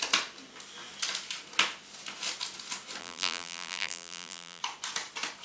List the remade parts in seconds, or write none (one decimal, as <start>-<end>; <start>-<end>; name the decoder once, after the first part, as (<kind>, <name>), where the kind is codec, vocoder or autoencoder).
3.0-4.6 (vocoder, BigVGAN v2)